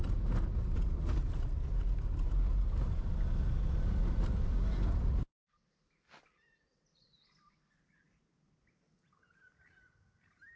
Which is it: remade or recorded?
recorded